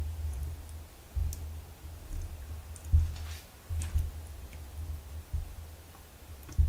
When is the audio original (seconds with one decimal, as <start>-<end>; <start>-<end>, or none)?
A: 0.0-6.7